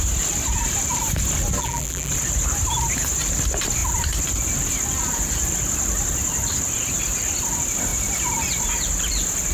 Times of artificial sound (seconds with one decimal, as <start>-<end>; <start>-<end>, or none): 1.6-2.1